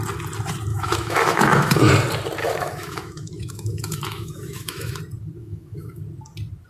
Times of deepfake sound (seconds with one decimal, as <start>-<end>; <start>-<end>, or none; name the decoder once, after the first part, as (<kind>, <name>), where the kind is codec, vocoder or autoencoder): 0.7-1.9 (autoencoder, DAC-VAE); 2.4-5.0; 5.4-6.0